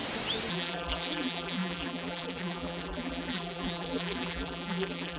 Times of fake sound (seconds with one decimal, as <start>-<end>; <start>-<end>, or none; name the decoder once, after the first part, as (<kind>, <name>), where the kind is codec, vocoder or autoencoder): 0.5-5.2 (vocoder, BigVGAN v2)